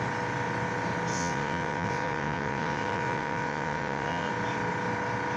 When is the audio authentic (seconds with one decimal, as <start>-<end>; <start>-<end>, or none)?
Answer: 0.0-1.1; 4.3-5.4